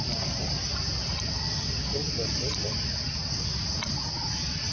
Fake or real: real